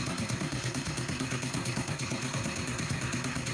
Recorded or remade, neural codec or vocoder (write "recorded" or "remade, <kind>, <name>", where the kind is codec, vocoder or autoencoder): remade, codec, SNAC